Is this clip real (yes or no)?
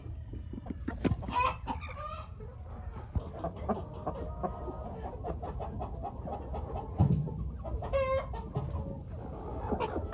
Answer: yes